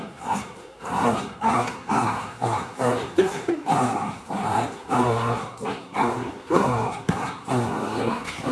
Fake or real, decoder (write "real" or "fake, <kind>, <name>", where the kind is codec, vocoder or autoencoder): fake, codec, SNAC